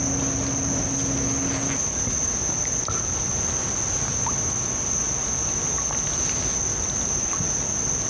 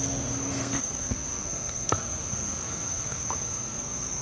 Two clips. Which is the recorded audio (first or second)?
first